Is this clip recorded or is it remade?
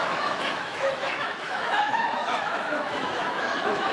remade